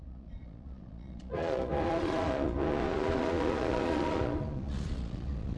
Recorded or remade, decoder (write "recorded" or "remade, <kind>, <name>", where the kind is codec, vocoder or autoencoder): remade, vocoder, Vocos